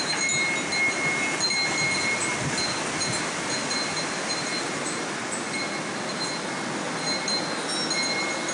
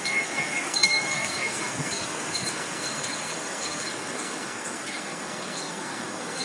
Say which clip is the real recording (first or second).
first